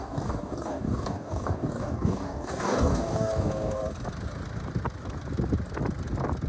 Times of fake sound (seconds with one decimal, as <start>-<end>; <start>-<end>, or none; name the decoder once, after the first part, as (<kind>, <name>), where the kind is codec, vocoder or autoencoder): 0.0-3.8 (codec, DAC)